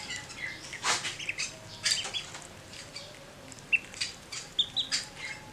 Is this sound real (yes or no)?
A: yes